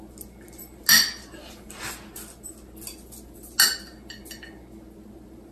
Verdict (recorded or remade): recorded